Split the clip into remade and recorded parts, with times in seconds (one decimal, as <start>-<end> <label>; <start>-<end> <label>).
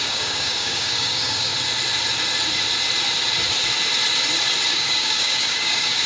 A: 0.0-1.5 remade; 1.5-4.7 recorded; 4.7-6.1 remade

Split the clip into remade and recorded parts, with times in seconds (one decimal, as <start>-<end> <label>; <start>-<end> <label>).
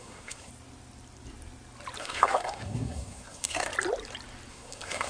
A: 0.0-0.5 remade; 0.5-2.0 recorded; 2.0-3.7 remade; 3.7-4.5 recorded; 4.5-5.1 remade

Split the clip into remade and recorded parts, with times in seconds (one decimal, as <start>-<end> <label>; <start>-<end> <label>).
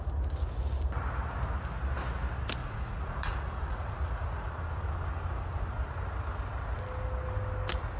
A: 0.0-2.6 recorded; 2.6-4.5 remade; 4.5-8.0 recorded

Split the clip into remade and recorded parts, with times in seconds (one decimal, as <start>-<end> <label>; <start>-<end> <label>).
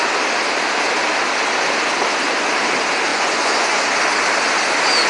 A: 0.0-3.1 recorded; 3.1-3.8 remade; 3.8-5.1 recorded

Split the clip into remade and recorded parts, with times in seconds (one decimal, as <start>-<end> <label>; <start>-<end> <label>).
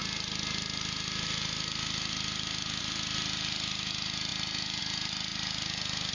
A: 0.0-6.1 recorded